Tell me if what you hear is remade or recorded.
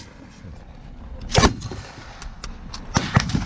recorded